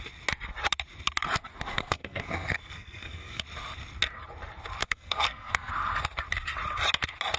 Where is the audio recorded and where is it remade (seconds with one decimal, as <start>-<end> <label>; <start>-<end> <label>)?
0.0-1.7 recorded; 1.7-3.4 remade; 3.4-4.8 recorded; 4.8-5.7 remade; 5.7-7.4 recorded